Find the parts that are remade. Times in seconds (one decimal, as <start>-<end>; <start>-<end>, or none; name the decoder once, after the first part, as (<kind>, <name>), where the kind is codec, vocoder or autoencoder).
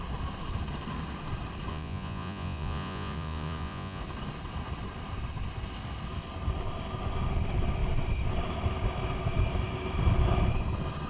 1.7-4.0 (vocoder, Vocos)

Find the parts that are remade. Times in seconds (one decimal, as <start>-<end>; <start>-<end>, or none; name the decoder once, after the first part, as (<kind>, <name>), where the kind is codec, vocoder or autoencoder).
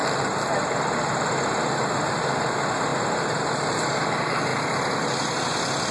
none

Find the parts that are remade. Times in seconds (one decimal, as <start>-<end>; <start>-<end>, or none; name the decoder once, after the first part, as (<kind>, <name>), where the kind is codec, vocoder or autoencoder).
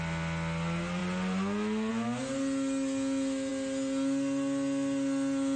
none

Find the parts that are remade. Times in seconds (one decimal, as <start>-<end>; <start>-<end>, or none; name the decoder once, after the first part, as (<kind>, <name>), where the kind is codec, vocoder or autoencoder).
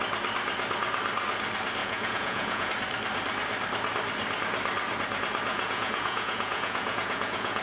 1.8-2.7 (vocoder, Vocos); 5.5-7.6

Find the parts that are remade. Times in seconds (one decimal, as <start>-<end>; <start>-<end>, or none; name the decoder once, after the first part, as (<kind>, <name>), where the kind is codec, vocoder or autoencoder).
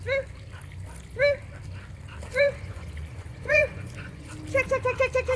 2.3-4.3 (vocoder, Vocos)